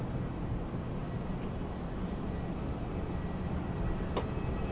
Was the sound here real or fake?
real